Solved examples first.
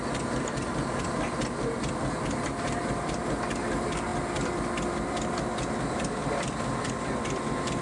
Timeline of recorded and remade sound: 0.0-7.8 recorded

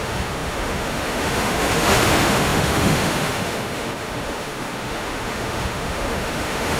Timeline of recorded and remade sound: 0.0-6.8 remade

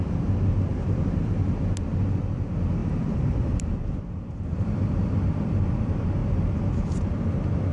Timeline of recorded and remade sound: 0.0-0.7 recorded; 0.7-1.3 remade; 1.3-2.8 recorded; 2.8-5.6 remade; 5.6-6.2 recorded; 6.2-7.1 remade; 7.1-7.7 recorded

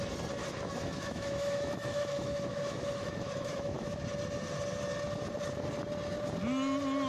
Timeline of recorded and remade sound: 0.0-0.4 recorded; 0.4-4.0 remade; 4.0-7.1 recorded